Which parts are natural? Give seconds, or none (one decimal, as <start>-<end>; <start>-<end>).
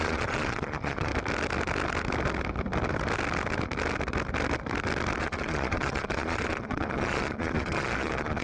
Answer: 1.1-5.2